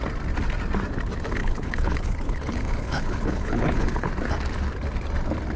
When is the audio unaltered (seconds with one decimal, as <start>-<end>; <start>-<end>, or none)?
0.0-1.4; 4.1-5.6